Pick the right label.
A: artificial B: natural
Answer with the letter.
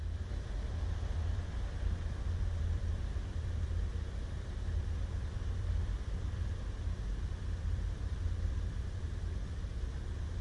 A